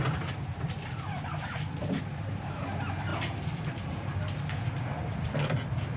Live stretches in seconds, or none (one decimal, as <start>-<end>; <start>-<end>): 0.0-6.0